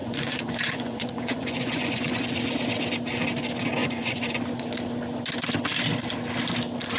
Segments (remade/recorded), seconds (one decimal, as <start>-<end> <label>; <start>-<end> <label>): 0.0-2.2 remade; 2.2-3.8 recorded; 3.8-4.4 remade; 4.4-7.0 recorded